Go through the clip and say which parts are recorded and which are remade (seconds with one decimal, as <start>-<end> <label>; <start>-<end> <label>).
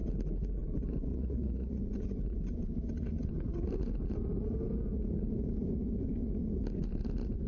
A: 0.0-1.1 recorded; 1.1-1.8 remade; 1.8-7.5 recorded